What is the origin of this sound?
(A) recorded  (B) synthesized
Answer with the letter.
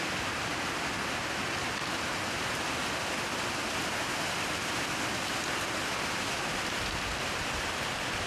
A